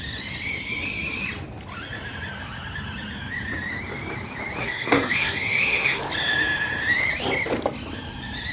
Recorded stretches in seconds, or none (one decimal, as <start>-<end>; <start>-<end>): 0.0-4.6; 6.0-8.5